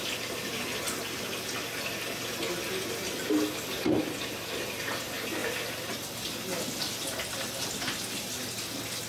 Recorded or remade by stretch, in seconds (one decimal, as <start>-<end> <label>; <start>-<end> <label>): 0.0-9.1 recorded